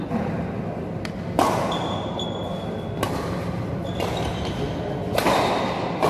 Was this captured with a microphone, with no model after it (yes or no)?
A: yes